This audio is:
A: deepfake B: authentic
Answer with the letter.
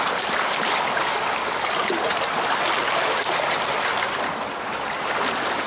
B